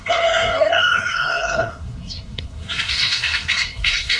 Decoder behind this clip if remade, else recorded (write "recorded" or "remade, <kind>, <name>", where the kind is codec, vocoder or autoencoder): remade, codec, SNAC